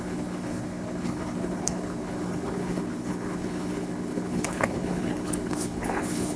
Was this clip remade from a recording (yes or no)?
yes